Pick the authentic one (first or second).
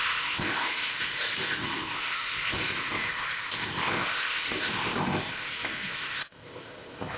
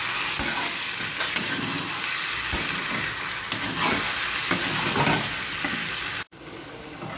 second